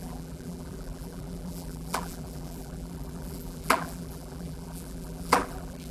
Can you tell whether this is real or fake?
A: fake